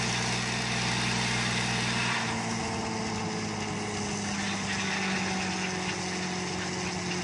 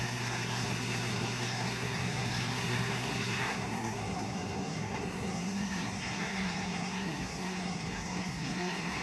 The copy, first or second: second